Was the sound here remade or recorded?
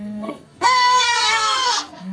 remade